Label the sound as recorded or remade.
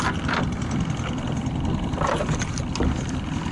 recorded